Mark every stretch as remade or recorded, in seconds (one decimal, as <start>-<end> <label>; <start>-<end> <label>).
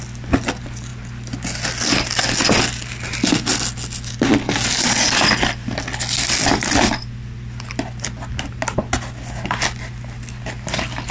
0.0-11.1 recorded